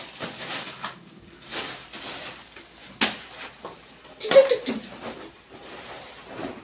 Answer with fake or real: real